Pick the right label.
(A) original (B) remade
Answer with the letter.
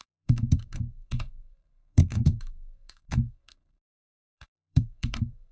B